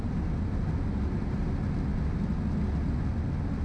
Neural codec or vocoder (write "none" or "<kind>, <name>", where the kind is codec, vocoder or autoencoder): none